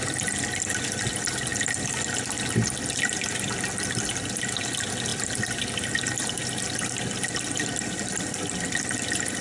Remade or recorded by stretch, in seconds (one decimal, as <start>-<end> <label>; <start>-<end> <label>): 0.0-9.4 recorded